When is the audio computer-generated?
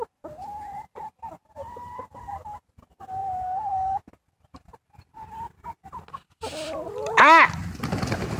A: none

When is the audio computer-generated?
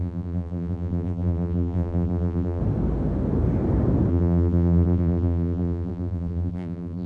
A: 0.0-2.6 (vocoder, BigVGAN v2); 4.1-7.1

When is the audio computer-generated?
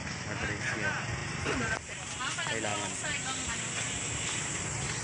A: 0.0-0.7 (vocoder, BigVGAN v2); 1.2-2.2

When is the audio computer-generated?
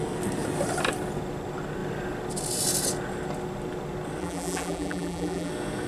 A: 4.2-5.5 (vocoder, BigVGAN v2)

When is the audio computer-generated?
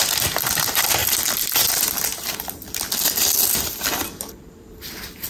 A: 0.0-5.3 (vocoder, BigVGAN v2)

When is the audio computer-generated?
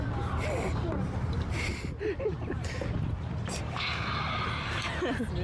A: none